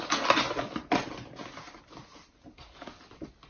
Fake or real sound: real